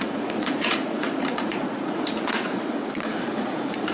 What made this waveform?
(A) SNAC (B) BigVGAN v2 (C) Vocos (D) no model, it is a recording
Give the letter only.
C